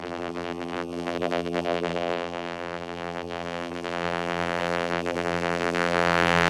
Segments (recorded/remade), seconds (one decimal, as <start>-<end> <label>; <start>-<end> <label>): 0.0-6.5 remade